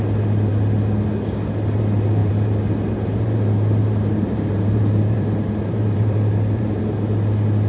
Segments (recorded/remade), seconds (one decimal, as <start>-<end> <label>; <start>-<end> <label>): 0.0-2.2 recorded; 2.2-6.8 remade; 6.8-7.7 recorded